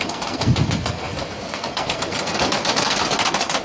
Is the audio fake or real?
fake